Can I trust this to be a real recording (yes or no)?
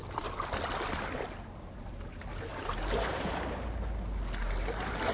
yes